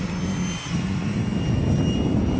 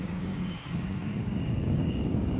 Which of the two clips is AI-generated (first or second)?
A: second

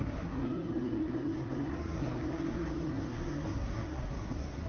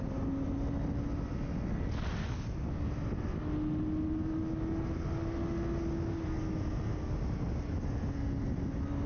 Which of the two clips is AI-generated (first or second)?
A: first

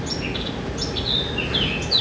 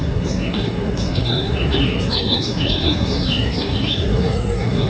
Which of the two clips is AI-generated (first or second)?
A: second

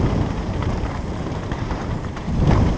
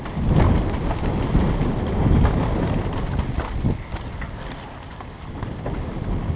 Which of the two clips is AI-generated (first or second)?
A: first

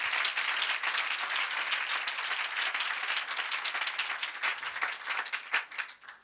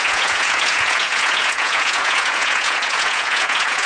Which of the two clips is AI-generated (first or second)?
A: second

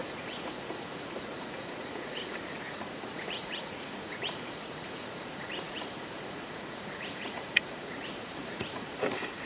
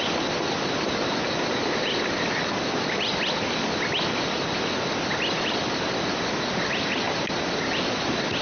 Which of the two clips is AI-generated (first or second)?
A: first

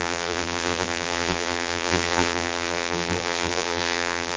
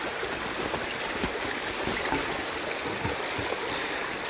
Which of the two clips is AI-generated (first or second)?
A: first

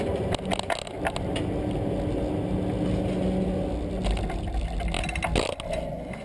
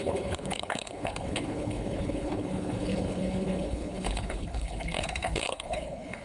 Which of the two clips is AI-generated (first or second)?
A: second